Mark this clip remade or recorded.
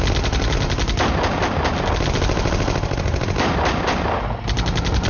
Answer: recorded